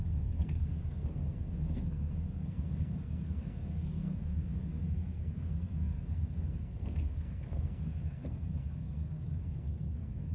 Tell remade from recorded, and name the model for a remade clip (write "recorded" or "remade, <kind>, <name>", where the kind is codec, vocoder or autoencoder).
remade, codec, SNAC